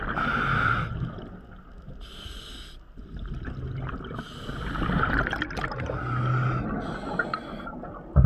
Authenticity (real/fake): real